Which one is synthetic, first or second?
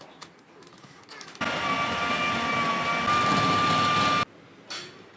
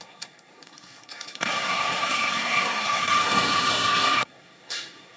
second